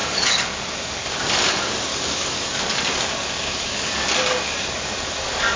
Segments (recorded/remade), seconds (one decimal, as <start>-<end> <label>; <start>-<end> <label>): 0.0-1.2 remade; 1.2-1.9 recorded; 1.9-5.6 remade